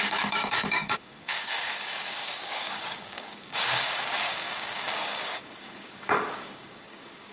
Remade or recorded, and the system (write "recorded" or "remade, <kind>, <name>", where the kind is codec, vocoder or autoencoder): remade, codec, DAC